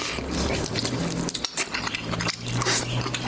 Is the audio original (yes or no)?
yes